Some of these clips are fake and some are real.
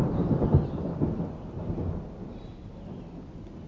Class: real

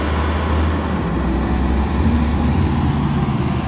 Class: real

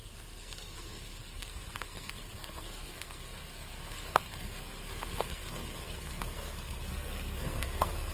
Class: fake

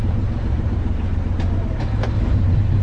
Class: fake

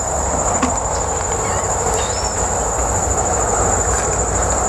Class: real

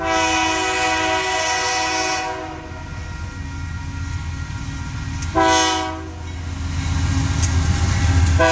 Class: real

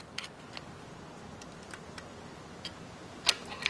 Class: real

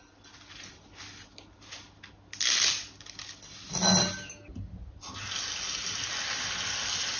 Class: real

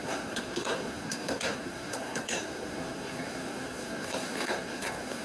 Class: fake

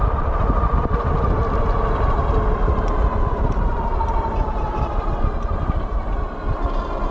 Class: fake